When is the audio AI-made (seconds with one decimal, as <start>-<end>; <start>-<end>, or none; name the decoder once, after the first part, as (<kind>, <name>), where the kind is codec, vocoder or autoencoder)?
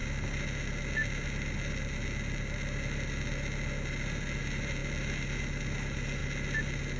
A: none